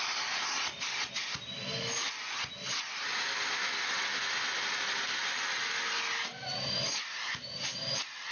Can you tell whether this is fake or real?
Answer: real